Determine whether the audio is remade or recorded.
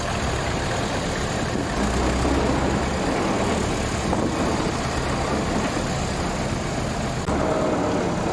recorded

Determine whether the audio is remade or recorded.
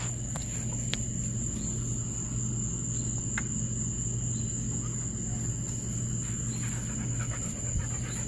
recorded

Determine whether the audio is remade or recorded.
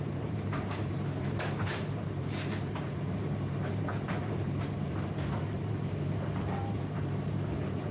remade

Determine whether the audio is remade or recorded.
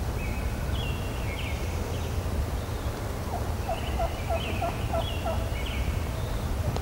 recorded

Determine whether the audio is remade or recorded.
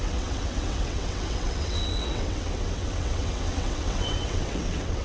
remade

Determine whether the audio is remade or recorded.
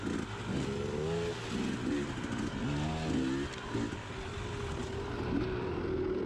recorded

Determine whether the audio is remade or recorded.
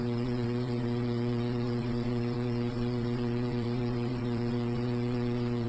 remade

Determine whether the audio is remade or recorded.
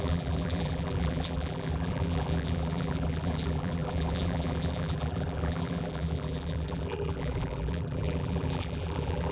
remade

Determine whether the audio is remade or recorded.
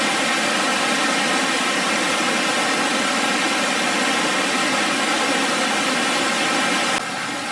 recorded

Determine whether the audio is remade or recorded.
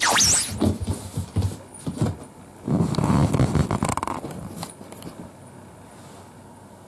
recorded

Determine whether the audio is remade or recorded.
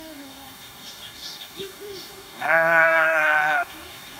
remade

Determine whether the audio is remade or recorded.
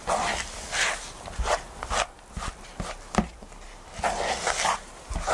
recorded